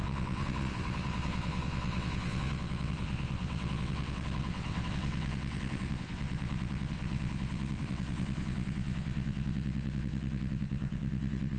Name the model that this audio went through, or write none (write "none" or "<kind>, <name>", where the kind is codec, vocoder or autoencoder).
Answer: vocoder, WaveNeXt